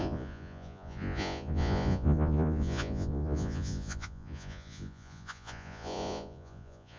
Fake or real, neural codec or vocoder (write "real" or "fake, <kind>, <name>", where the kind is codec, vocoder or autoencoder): fake, vocoder, Vocos